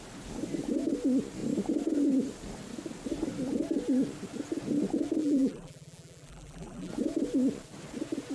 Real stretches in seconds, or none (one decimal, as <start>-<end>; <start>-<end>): 0.0-5.2; 6.9-8.3